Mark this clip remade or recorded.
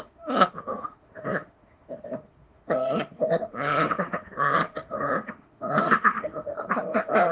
remade